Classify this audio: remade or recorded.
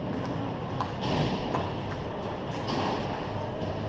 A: recorded